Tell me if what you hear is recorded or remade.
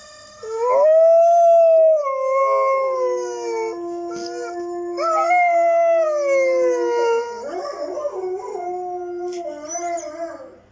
recorded